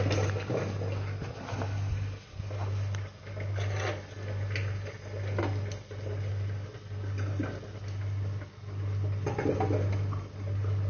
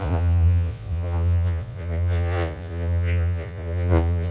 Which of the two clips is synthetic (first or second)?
second